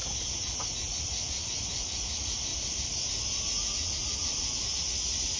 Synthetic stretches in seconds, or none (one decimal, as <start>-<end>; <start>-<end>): 0.0-2.5; 3.5-5.4